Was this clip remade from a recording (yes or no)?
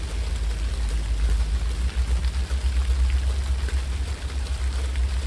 no